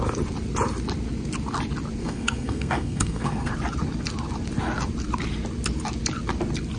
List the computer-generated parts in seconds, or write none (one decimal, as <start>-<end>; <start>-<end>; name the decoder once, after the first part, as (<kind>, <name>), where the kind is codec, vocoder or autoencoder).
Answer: 2.0-3.5 (codec, SNAC)